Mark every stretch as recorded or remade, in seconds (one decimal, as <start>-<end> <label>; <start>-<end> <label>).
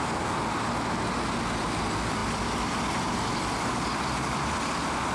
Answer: 0.0-2.2 recorded; 2.2-3.3 remade; 3.3-5.1 recorded